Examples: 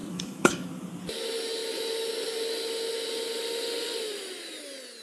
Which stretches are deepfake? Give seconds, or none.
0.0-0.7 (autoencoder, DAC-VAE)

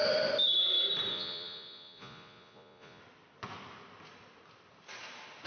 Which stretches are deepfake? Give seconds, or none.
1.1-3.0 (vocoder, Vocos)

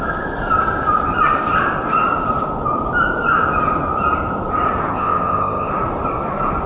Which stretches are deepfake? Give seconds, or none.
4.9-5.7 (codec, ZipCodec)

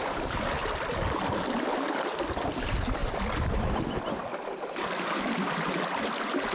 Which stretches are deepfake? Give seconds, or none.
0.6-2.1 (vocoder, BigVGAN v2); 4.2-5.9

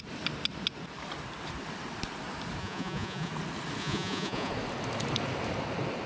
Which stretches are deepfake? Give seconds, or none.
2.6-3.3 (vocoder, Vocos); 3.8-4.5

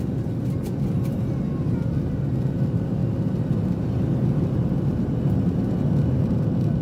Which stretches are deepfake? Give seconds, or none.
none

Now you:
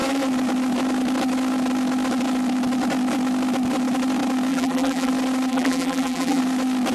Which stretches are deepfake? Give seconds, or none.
4.5-5.1 (vocoder, BigVGAN v2); 5.5-6.4